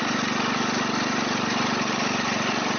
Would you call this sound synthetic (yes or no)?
no